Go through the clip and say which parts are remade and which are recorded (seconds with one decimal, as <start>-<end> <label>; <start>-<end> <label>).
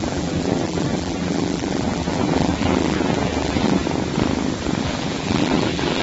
0.0-3.8 remade; 3.8-4.8 recorded; 4.8-6.0 remade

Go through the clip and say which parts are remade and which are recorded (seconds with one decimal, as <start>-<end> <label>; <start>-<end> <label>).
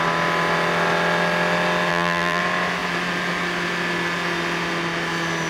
0.0-1.9 recorded; 1.9-2.4 remade; 2.4-5.5 recorded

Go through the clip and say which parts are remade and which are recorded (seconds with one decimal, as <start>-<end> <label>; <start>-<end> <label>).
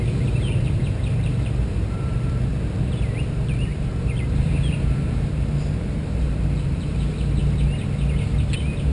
0.0-2.5 remade; 2.5-3.1 recorded; 3.1-7.4 remade; 7.4-8.4 recorded; 8.4-8.9 remade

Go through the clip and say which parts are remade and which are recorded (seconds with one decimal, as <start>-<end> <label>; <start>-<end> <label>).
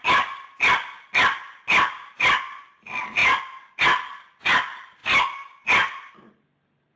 0.0-7.0 recorded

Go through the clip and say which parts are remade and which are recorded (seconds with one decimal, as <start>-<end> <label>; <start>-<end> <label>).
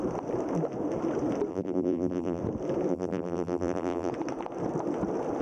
0.0-1.5 recorded; 1.5-2.4 remade; 2.4-2.9 recorded; 2.9-4.1 remade; 4.1-5.4 recorded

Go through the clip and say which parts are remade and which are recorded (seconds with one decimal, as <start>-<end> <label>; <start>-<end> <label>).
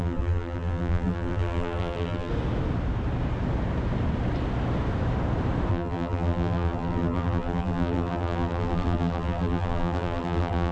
0.0-2.3 remade; 2.3-5.7 recorded; 5.7-10.7 remade